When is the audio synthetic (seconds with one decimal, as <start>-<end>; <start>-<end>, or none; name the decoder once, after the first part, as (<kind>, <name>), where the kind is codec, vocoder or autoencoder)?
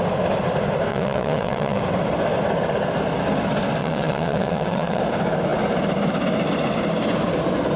0.9-1.8 (vocoder, WaveNeXt); 3.8-5.0